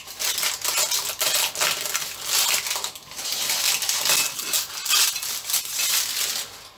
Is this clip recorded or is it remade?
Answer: recorded